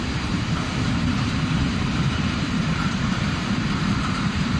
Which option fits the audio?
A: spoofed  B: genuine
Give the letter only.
A